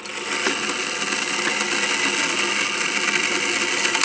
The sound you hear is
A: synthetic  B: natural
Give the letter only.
B